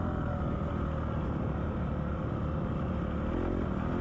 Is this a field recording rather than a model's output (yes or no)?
yes